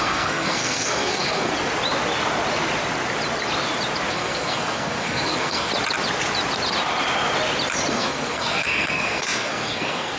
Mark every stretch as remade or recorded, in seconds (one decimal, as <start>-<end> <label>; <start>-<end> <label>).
0.0-1.5 remade; 1.5-4.1 recorded; 4.1-5.7 remade; 5.7-7.9 recorded; 7.9-10.2 remade